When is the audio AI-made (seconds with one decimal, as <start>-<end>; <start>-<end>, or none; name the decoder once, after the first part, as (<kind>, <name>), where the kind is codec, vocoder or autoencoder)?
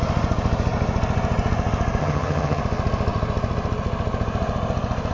2.0-2.6 (vocoder, HiFi-GAN)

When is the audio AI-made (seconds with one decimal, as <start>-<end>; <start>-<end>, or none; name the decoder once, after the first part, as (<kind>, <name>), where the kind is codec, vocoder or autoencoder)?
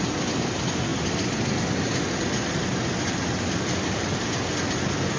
none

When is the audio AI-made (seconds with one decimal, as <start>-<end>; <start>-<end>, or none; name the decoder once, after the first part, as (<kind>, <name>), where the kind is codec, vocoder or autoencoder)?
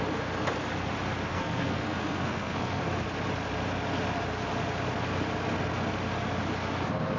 1.3-2.8 (codec, SNAC)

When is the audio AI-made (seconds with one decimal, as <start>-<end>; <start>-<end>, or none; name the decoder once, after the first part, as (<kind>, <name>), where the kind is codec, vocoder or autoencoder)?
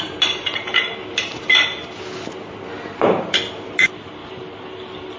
none